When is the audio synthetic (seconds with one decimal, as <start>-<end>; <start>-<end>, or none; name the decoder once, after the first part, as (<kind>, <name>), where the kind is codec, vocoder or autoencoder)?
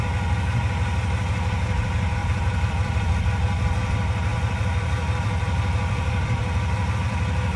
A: 2.2-3.1 (vocoder, BigVGAN v2); 4.3-7.6